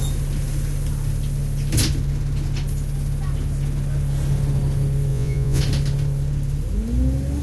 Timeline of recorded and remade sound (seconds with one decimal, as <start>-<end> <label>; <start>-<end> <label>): 0.0-5.1 recorded; 5.1-5.6 remade; 5.6-7.4 recorded